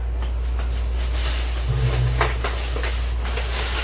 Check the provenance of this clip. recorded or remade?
recorded